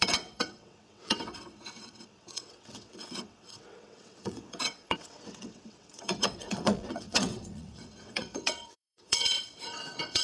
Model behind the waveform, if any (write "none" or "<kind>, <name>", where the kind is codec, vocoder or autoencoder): vocoder, WaveNeXt